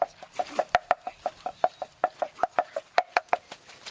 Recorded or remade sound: recorded